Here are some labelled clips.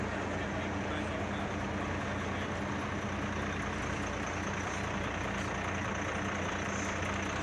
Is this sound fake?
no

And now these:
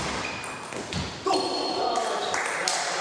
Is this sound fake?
no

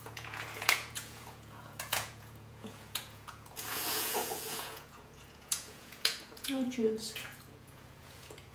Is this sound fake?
yes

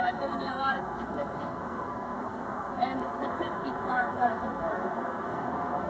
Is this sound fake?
yes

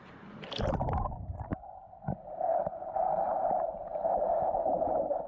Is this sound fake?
yes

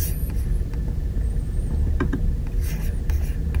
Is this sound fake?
no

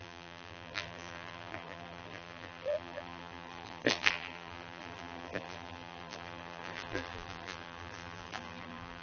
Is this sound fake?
yes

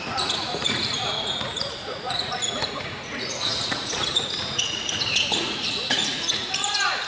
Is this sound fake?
yes